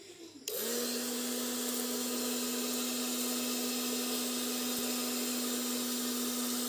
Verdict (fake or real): real